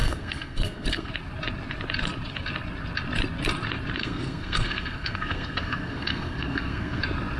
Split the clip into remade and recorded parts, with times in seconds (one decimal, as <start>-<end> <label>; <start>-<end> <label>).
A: 0.0-1.1 remade; 1.1-4.0 recorded; 4.0-7.0 remade; 7.0-7.4 recorded